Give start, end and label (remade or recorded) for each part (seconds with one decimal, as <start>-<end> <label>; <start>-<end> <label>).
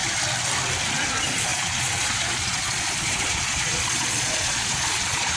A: 0.0-1.1 recorded; 1.1-5.4 remade